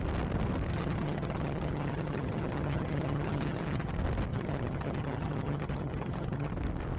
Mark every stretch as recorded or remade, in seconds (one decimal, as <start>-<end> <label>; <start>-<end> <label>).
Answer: 0.0-0.7 recorded; 0.7-3.9 remade; 3.9-4.3 recorded; 4.3-6.5 remade; 6.5-7.0 recorded